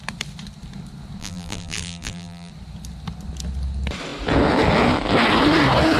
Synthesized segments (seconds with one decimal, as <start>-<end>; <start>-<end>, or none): 1.2-2.5